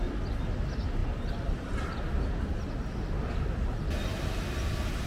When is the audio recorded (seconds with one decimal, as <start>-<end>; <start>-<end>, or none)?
0.0-5.1